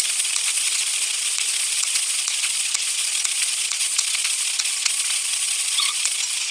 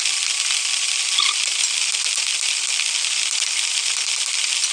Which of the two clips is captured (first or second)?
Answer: second